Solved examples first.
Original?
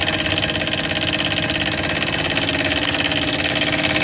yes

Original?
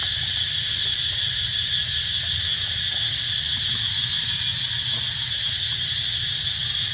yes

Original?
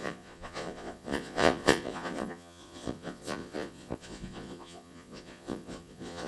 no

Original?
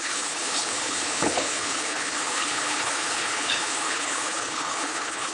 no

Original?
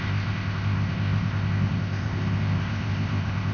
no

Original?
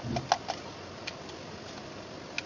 yes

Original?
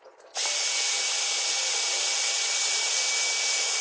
yes